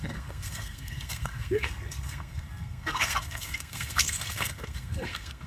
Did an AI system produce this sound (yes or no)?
yes